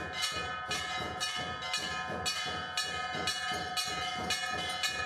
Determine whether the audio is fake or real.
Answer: real